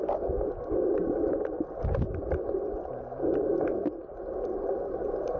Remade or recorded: recorded